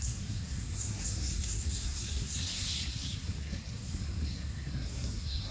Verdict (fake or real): fake